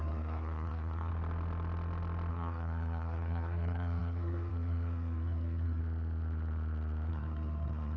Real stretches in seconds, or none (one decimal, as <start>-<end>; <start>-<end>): 1.1-2.3; 5.8-7.1